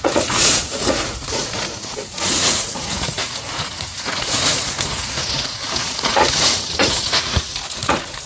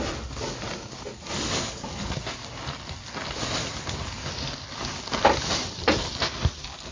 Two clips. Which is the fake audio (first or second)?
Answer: first